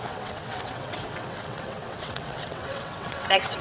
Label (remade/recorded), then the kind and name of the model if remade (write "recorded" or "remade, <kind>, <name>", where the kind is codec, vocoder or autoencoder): remade, vocoder, WaveNeXt